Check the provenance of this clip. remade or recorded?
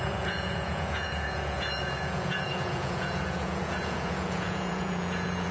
remade